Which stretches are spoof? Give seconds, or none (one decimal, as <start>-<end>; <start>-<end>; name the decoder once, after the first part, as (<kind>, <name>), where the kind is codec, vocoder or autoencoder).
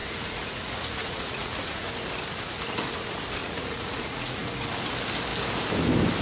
0.0-1.9 (vocoder, Vocos); 3.4-4.5